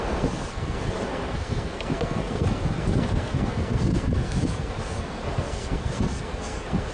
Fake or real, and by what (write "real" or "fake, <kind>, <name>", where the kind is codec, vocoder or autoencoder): fake, codec, SNAC